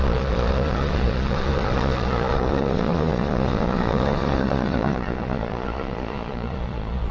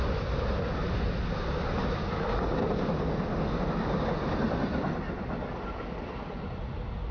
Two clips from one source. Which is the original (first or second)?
second